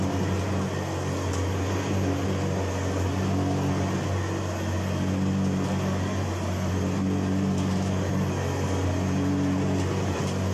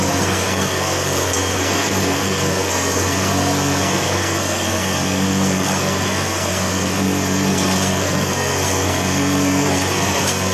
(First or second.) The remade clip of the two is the second